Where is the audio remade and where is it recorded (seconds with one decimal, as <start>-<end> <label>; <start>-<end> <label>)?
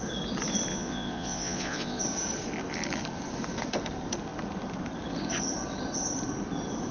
0.0-0.7 recorded; 0.7-2.0 remade; 2.0-6.9 recorded